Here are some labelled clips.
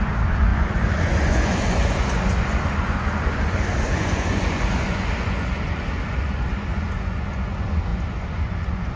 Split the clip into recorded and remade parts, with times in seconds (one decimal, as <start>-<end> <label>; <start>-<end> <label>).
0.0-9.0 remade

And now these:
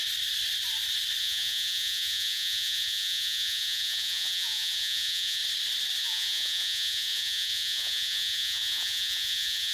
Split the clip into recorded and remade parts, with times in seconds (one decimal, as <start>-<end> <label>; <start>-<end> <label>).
0.0-1.2 recorded; 1.2-5.4 remade; 5.4-6.0 recorded; 6.0-9.7 remade

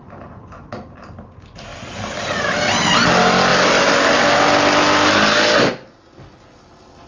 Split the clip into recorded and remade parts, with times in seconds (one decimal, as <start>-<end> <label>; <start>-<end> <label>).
0.0-7.1 recorded